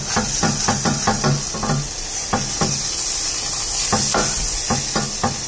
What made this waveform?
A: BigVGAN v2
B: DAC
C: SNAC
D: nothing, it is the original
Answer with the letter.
D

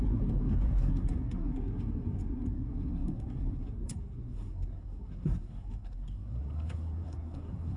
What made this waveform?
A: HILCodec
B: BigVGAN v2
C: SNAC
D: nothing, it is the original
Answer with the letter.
C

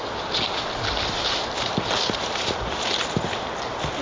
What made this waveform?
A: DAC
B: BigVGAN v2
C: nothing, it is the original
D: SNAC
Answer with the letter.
C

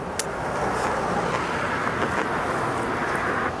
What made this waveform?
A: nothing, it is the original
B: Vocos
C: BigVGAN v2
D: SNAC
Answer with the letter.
A